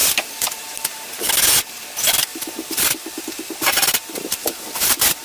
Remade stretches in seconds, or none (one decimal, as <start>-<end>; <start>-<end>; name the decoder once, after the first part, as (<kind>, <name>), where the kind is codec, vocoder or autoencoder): 0.0-1.3 (vocoder, BigVGAN v2); 2.3-3.2; 4.0-5.2

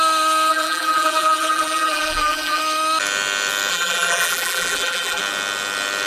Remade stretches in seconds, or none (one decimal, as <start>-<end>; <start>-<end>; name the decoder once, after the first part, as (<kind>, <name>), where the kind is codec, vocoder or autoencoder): 0.5-2.6 (vocoder, BigVGAN v2); 3.7-5.2

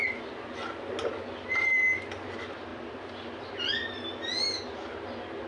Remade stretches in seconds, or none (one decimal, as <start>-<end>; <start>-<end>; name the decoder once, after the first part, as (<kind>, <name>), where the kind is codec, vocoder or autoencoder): none

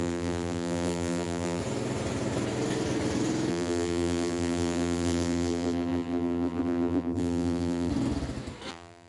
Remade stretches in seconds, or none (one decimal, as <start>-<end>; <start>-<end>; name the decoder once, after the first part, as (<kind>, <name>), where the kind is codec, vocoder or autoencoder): 0.0-1.6 (vocoder, BigVGAN v2); 3.5-7.9; 8.7-9.1

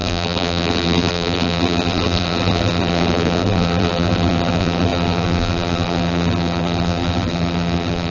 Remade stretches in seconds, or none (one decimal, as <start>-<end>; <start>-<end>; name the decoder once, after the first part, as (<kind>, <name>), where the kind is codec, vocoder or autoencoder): 0.0-8.1 (vocoder, BigVGAN v2)